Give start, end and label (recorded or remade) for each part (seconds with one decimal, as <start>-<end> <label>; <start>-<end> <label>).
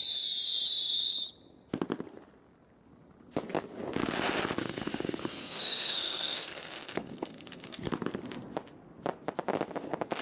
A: 0.0-4.6 recorded; 4.6-7.9 remade; 7.9-10.2 recorded